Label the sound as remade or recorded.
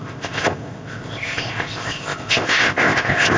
remade